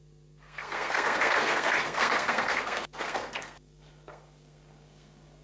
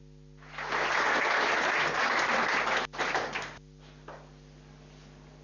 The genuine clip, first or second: second